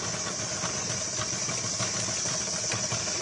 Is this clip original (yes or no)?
yes